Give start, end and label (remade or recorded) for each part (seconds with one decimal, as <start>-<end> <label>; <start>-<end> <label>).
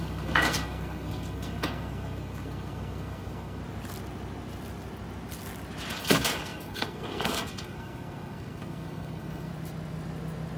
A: 0.0-3.6 remade; 3.6-5.9 recorded; 5.9-9.5 remade; 9.5-10.6 recorded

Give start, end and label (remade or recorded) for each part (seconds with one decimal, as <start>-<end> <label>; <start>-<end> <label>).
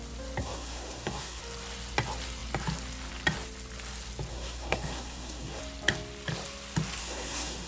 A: 0.0-0.4 recorded; 0.4-1.4 remade; 1.4-4.3 recorded; 4.3-5.6 remade; 5.6-7.0 recorded; 7.0-7.7 remade